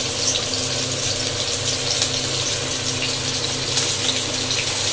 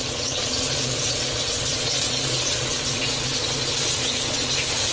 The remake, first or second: second